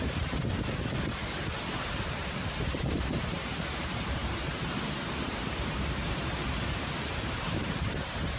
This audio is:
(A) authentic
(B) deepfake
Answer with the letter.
B